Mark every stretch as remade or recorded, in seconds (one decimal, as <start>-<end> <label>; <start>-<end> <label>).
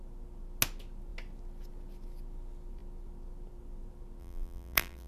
0.0-4.2 recorded; 4.2-5.1 remade